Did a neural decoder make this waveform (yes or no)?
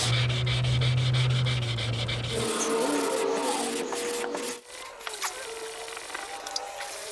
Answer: no